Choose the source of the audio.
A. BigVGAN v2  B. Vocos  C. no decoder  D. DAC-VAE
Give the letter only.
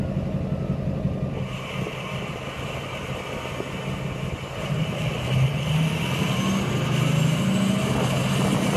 C